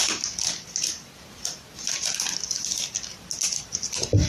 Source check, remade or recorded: recorded